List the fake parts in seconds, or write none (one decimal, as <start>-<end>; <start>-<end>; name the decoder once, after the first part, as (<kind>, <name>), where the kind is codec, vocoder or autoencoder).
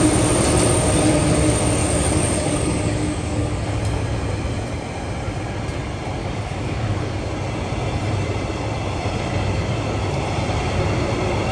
1.8-3.8 (codec, DAC); 6.2-7.2